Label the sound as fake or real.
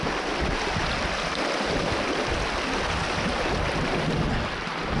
real